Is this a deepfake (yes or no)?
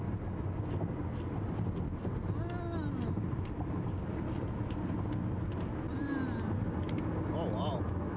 no